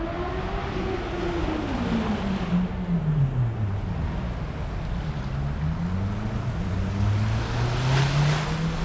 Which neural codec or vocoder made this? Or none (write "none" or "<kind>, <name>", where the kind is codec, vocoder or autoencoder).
none